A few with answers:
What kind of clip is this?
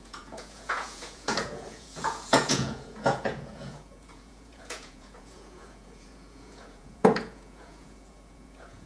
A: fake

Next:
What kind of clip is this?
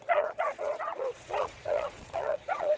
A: fake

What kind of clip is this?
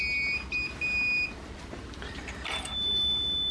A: real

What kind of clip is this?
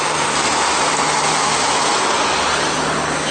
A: real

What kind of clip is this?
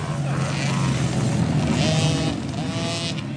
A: real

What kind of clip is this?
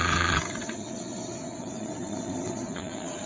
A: fake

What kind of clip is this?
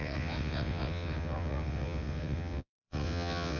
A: fake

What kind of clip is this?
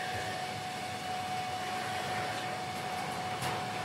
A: real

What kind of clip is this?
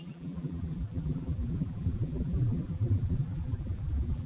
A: fake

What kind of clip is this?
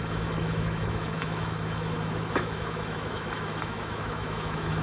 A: fake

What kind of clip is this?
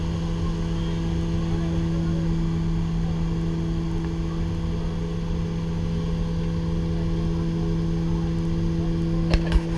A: real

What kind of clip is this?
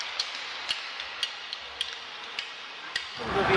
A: real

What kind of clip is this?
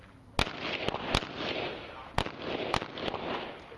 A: real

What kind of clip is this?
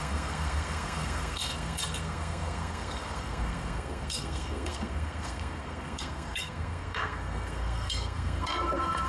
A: fake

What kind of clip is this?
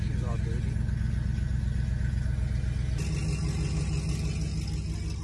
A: real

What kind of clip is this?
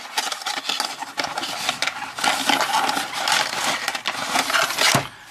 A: real